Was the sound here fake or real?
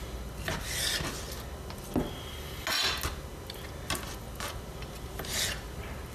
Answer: real